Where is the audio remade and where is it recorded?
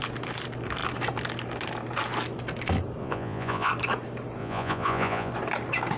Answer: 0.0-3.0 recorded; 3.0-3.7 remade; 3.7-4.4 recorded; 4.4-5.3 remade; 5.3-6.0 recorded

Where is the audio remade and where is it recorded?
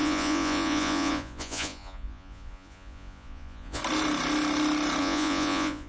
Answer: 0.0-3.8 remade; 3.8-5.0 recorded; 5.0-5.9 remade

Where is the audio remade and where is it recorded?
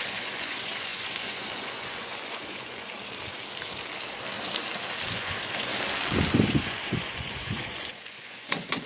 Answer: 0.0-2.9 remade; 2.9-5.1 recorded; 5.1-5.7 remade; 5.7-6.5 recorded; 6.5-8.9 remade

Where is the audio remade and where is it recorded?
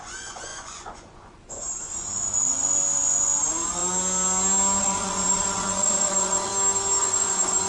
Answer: 0.0-3.8 remade; 3.8-4.8 recorded; 4.8-6.5 remade; 6.5-7.0 recorded; 7.0-7.7 remade